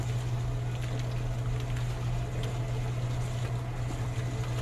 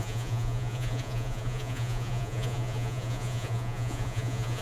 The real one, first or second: first